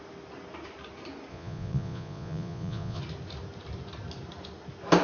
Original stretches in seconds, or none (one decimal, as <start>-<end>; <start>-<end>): 0.0-1.3; 3.0-5.0